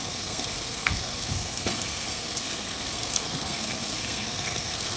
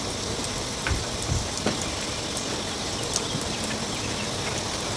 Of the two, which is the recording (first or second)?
second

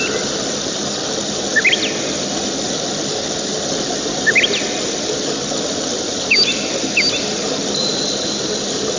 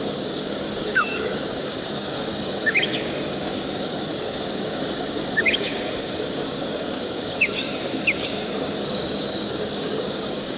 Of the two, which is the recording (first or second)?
first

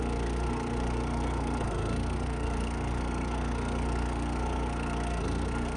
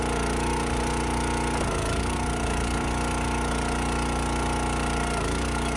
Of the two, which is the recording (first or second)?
second